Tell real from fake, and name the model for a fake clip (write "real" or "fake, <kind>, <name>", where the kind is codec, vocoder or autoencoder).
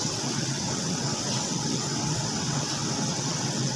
fake, vocoder, WaveNeXt